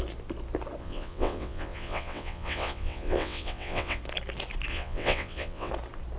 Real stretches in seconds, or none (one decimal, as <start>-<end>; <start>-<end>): 0.0-0.8; 4.0-4.7; 5.7-6.2